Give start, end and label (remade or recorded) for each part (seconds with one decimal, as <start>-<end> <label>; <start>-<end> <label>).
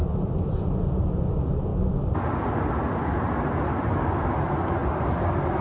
0.0-0.7 remade; 0.7-5.6 recorded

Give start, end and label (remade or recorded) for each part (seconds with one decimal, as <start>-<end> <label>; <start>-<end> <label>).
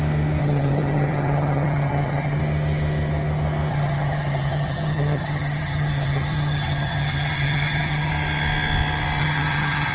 0.0-0.4 recorded; 0.4-2.4 remade; 2.4-3.7 recorded; 3.7-8.1 remade; 8.1-9.2 recorded; 9.2-9.9 remade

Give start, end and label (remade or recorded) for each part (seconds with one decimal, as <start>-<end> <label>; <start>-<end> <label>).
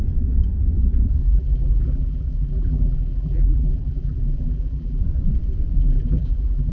0.0-1.2 recorded; 1.2-5.0 remade; 5.0-5.8 recorded; 5.8-6.7 remade